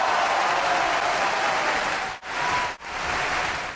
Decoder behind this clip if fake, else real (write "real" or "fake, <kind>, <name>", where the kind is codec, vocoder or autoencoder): real